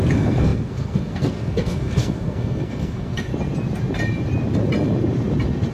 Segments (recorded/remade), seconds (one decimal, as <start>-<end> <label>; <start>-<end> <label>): 0.0-3.3 remade; 3.3-5.7 recorded